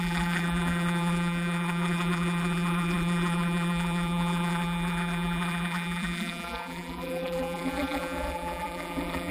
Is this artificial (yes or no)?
yes